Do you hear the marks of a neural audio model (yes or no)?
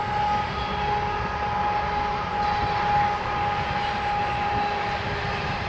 no